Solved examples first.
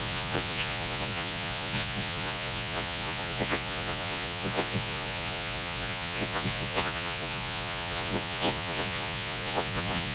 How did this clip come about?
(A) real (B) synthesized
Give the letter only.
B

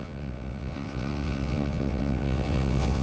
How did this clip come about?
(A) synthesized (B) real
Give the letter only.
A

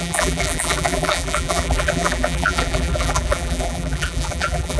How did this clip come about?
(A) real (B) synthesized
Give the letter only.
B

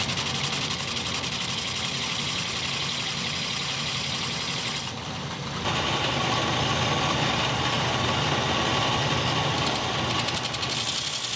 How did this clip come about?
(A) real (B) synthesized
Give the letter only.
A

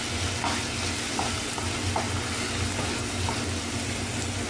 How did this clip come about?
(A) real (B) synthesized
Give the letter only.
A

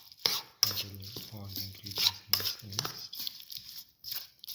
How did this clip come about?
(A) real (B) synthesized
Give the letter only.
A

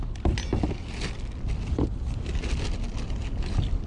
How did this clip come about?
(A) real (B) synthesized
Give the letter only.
A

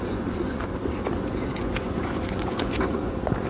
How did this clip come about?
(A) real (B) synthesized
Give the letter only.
B